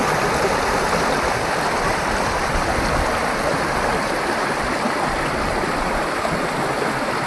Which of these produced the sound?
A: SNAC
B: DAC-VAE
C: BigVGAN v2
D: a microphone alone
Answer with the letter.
C